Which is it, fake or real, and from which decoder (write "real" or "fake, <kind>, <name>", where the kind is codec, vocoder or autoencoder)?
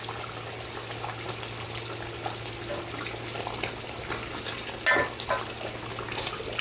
real